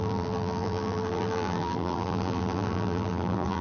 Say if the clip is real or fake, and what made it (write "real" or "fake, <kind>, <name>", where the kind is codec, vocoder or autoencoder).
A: fake, vocoder, BigVGAN v2